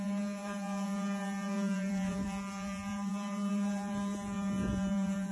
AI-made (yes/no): yes